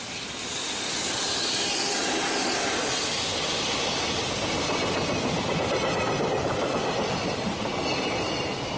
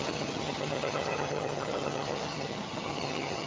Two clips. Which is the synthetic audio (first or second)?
second